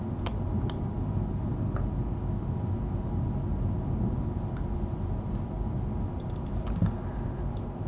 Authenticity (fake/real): real